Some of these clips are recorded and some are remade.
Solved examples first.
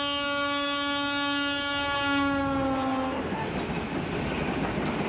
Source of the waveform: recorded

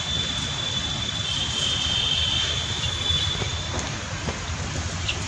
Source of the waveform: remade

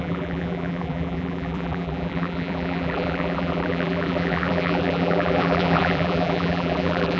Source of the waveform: remade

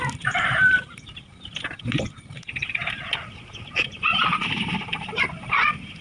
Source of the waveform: remade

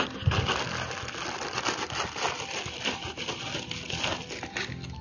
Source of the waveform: recorded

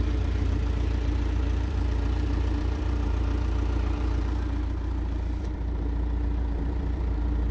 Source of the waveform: remade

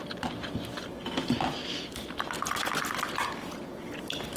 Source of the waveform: recorded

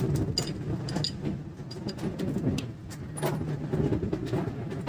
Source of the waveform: recorded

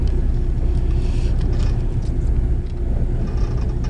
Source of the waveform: recorded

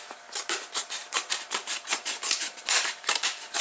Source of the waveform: remade